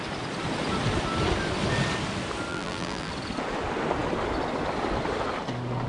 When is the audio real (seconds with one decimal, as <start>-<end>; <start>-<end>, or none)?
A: 0.0-2.5; 3.1-5.9